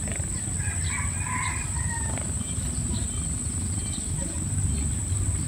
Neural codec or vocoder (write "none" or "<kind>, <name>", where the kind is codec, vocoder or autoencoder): none